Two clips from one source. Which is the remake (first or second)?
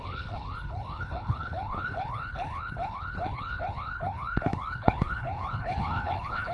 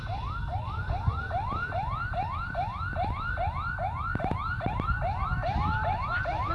first